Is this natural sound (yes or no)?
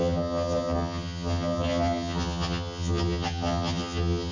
no